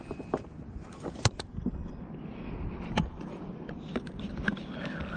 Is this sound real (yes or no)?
yes